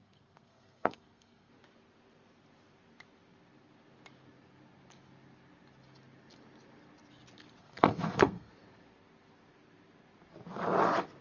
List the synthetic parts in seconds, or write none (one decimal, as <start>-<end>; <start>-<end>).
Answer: 0.0-1.5; 7.6-8.5